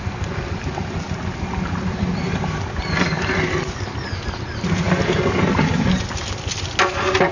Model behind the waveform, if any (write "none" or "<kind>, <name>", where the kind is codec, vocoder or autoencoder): none